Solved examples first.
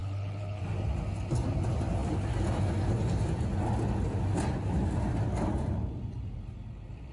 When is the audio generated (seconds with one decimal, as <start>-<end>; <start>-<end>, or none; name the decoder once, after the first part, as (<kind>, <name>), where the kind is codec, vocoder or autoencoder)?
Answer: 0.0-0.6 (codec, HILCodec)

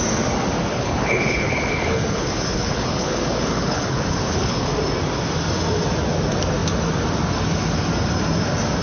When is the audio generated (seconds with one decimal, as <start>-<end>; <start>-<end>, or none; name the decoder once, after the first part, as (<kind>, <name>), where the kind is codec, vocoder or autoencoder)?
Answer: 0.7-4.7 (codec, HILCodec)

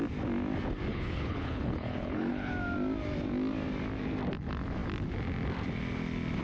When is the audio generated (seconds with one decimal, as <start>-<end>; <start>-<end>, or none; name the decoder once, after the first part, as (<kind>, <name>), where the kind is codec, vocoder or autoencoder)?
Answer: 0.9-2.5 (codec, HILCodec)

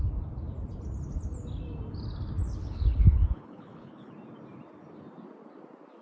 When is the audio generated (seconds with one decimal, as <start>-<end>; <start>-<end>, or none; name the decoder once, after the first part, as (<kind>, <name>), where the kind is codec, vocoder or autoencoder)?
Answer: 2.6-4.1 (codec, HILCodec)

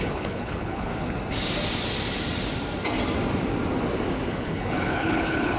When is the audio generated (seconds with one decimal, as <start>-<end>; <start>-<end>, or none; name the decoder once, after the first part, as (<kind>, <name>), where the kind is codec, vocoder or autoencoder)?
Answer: 0.0-0.9 (codec, HILCodec); 4.3-5.6

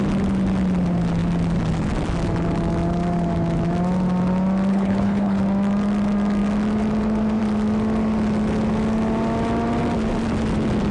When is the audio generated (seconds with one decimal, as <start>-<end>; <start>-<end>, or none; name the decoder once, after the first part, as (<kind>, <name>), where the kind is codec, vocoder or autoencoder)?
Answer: 4.7-5.4 (codec, HILCodec)

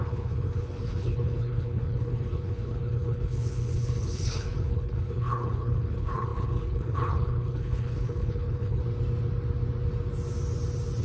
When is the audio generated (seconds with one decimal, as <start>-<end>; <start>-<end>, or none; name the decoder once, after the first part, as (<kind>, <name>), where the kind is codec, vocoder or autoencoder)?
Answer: 0.0-8.8 (codec, HILCodec)